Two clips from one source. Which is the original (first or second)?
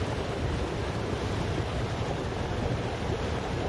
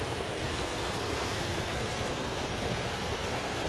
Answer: first